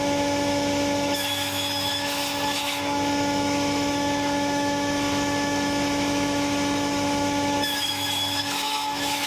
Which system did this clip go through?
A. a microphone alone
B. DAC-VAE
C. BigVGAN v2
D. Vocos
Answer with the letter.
B